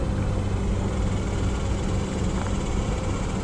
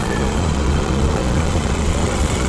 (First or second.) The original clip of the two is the first